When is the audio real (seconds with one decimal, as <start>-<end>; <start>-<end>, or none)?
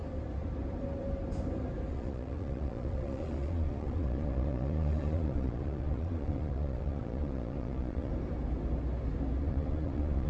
0.0-1.9; 8.1-9.4